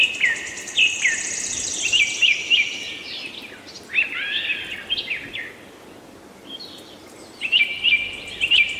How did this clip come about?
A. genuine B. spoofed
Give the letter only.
A